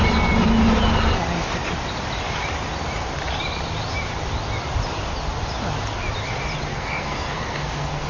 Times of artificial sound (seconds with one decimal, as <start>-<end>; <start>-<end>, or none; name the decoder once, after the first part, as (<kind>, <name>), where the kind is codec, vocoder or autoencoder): 6.7-8.1 (codec, SNAC)